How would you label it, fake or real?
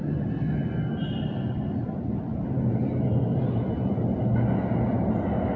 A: real